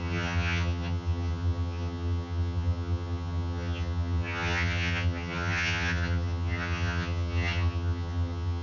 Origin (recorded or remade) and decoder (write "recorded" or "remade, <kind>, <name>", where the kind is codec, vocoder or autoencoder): remade, vocoder, HiFi-GAN